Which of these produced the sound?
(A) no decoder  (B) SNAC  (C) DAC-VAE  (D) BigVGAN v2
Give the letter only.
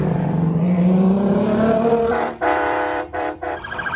D